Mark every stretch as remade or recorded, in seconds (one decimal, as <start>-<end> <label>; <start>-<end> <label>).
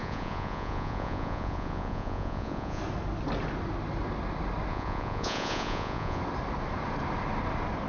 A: 0.0-2.8 remade; 2.8-4.7 recorded; 4.7-6.2 remade; 6.2-7.9 recorded